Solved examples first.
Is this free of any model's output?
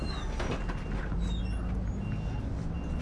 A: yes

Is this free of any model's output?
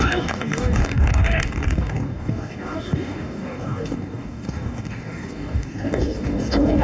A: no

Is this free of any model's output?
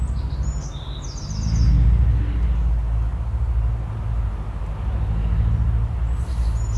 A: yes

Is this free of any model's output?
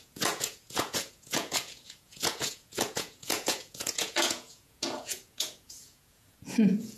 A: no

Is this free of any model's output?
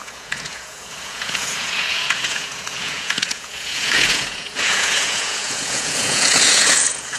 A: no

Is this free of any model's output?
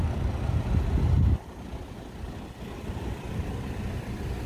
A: yes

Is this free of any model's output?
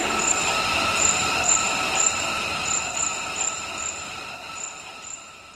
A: no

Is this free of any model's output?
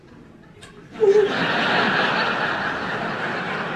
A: yes